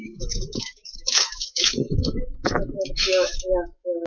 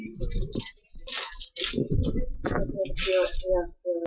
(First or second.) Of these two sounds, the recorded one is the second